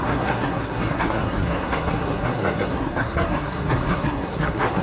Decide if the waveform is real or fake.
fake